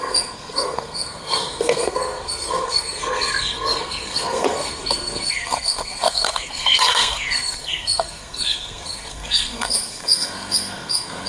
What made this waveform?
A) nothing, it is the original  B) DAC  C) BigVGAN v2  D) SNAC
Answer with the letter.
D